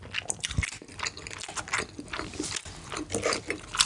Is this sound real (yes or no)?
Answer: yes